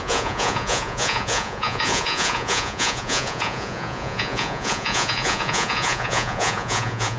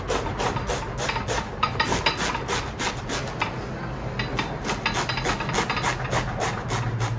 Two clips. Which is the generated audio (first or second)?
first